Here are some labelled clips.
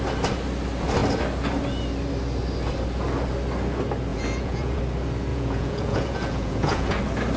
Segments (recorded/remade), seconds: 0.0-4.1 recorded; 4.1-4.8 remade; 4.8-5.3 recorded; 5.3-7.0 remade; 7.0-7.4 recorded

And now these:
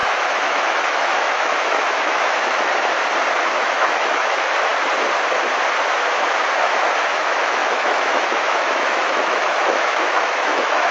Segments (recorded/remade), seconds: 0.0-2.7 remade; 2.7-3.4 recorded; 3.4-4.7 remade; 4.7-7.1 recorded; 7.1-10.9 remade

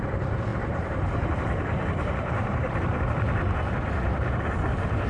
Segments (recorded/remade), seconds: 0.0-0.5 recorded; 0.5-3.1 remade; 3.1-5.1 recorded

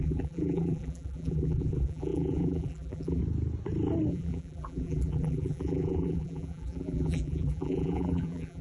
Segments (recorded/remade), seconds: 0.0-3.2 remade; 3.2-4.1 recorded; 4.1-8.6 remade